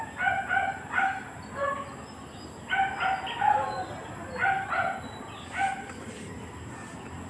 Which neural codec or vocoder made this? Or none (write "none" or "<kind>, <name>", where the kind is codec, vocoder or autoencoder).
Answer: none